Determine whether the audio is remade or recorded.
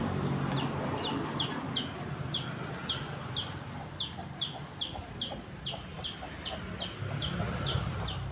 recorded